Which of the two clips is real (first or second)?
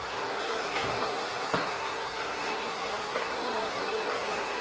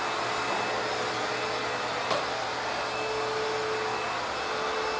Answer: second